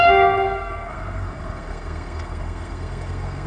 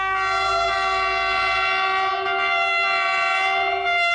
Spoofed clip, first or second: first